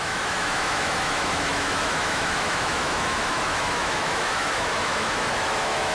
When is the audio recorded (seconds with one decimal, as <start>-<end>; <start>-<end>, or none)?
none